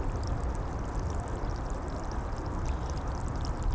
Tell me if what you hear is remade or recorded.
recorded